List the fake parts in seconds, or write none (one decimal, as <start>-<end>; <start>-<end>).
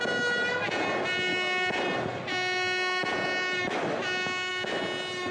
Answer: none